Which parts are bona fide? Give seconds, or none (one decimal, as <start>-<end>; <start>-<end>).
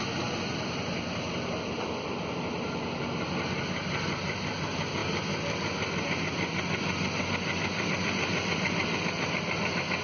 0.0-10.0